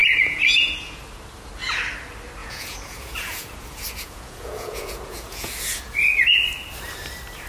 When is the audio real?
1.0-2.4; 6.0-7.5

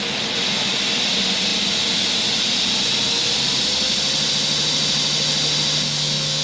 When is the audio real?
0.0-6.4

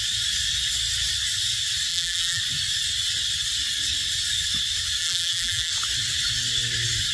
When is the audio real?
0.0-1.9; 2.4-5.0; 5.7-7.1

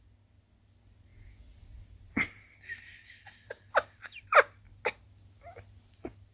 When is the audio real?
0.0-6.3

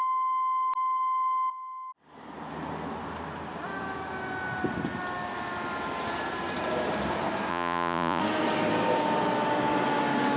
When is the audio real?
0.0-7.5; 8.2-10.4

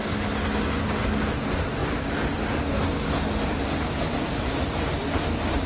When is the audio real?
0.0-5.7

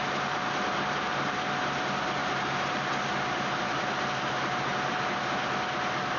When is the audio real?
0.0-2.2; 2.8-6.2

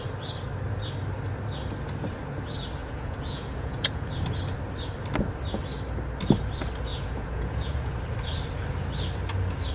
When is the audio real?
0.0-2.8; 4.1-6.9; 8.0-9.7